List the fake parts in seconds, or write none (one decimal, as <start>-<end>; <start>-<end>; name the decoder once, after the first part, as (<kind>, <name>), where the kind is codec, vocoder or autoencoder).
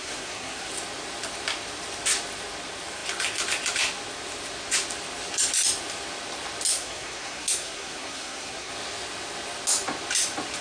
0.0-0.7 (codec, SNAC); 6.7-8.7